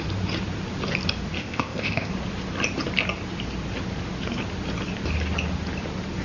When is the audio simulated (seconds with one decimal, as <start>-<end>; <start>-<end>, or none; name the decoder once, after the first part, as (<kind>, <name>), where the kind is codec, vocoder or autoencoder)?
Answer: 1.4-2.1 (codec, ZipCodec)